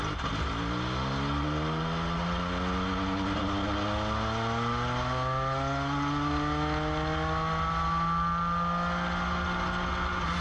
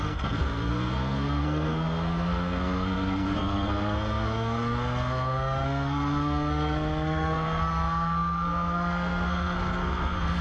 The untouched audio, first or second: first